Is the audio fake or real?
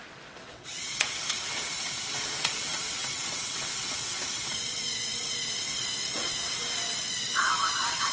fake